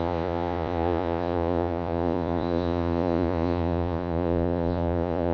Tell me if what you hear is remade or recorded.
remade